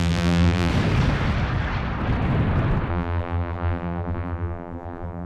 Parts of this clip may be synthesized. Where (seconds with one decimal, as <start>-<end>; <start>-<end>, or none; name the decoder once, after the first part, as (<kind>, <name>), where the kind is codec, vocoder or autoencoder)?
0.0-0.7 (vocoder, BigVGAN v2); 2.9-5.3